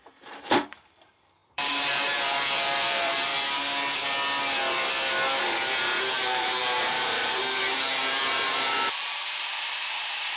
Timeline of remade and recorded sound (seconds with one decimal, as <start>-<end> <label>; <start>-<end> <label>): 0.0-3.3 remade; 3.3-5.4 recorded; 5.4-10.4 remade